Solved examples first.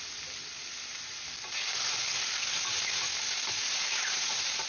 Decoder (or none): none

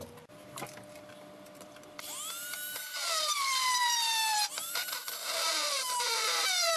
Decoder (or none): vocoder, BigVGAN v2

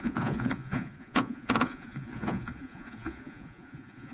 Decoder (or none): vocoder, Vocos